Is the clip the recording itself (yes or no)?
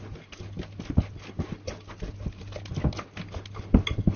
yes